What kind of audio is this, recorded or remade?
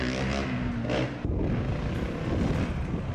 recorded